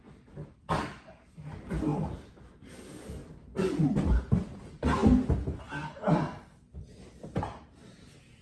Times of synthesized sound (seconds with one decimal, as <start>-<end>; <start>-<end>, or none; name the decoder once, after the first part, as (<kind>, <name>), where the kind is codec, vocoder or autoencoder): none